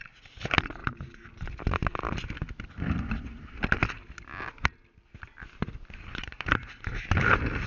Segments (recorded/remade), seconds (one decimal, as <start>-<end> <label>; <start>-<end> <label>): 0.0-0.8 remade; 0.8-5.4 recorded; 5.4-7.7 remade